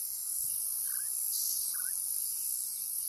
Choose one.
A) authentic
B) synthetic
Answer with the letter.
A